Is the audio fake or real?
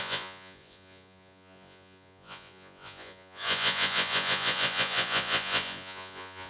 fake